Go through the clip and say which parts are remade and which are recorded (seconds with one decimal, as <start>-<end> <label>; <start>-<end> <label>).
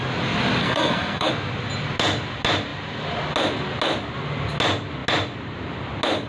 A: 0.0-0.6 recorded; 0.6-1.3 remade; 1.3-6.3 recorded